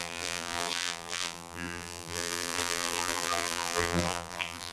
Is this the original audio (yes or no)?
no